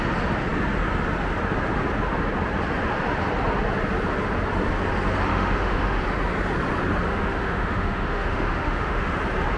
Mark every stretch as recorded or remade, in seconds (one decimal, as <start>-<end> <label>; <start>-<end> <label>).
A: 0.0-5.3 recorded; 5.3-6.0 remade; 6.0-7.1 recorded; 7.1-9.2 remade; 9.2-9.6 recorded